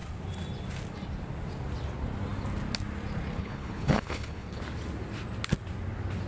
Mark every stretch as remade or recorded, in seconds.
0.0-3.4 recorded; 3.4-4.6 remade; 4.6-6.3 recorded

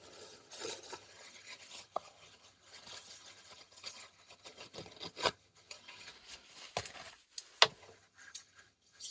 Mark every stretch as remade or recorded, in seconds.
0.0-6.1 remade; 6.1-7.8 recorded; 7.8-9.1 remade

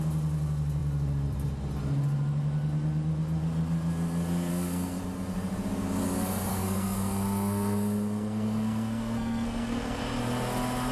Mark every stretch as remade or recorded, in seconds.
0.0-4.5 recorded; 4.5-5.0 remade; 5.0-6.5 recorded; 6.5-10.0 remade; 10.0-10.9 recorded

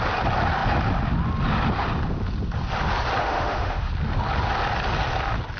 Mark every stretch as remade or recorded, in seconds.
0.0-3.2 recorded; 3.2-3.9 remade; 3.9-5.6 recorded